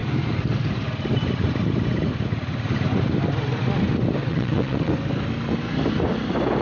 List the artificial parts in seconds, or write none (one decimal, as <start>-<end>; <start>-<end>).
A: 4.3-4.9